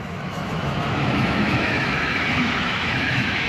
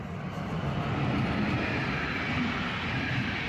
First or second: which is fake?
first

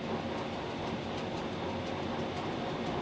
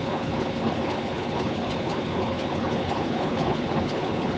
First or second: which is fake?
second